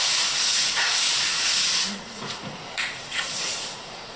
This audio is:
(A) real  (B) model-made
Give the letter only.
B